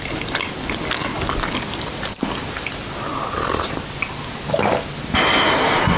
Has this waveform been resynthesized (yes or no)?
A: no